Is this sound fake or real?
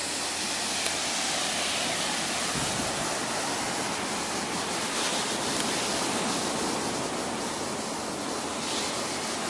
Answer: real